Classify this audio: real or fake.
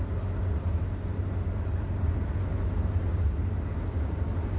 real